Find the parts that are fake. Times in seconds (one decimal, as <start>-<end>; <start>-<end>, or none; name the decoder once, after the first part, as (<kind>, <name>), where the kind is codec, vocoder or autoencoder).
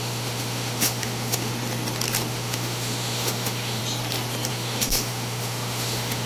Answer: 0.0-1.5 (autoencoder, DAC-VAE); 2.3-3.8; 4.5-6.3